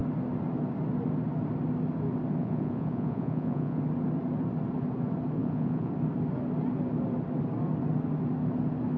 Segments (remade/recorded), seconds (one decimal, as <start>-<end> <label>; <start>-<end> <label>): 0.0-2.4 recorded; 2.4-3.8 remade; 3.8-5.4 recorded; 5.4-5.9 remade; 5.9-9.0 recorded